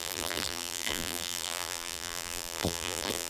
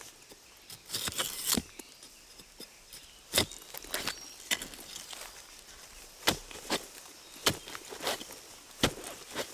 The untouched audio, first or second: second